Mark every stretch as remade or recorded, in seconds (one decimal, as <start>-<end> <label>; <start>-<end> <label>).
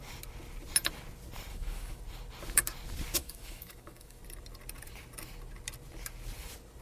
0.0-1.5 recorded; 1.5-2.0 remade; 2.0-3.2 recorded; 3.2-4.2 remade; 4.2-6.8 recorded